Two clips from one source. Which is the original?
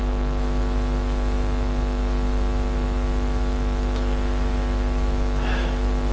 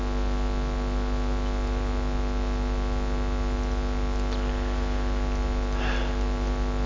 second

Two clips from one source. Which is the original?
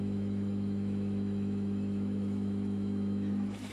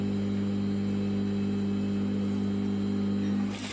second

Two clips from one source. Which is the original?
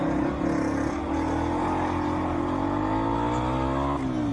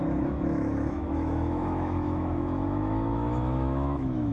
first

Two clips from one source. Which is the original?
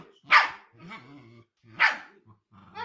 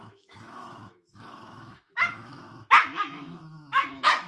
first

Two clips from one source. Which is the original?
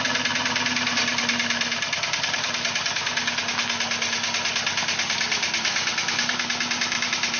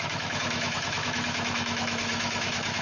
first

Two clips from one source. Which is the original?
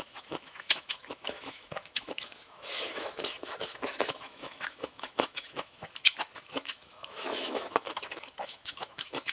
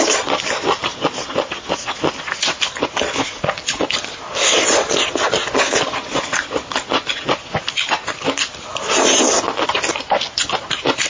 second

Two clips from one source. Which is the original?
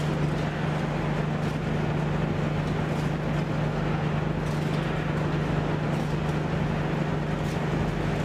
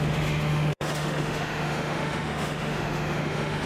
first